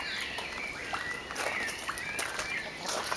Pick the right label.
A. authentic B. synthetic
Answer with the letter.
A